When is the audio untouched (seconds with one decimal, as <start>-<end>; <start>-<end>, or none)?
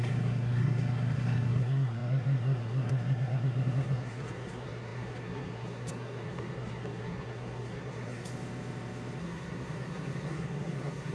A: 8.3-9.2